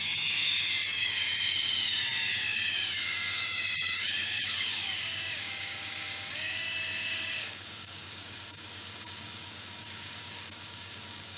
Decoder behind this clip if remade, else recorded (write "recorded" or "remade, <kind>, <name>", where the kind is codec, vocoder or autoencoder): remade, codec, DAC